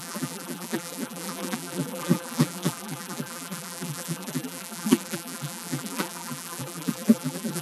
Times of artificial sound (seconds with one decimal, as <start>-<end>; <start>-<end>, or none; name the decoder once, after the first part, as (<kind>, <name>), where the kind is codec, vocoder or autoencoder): 0.0-7.6 (vocoder, BigVGAN v2)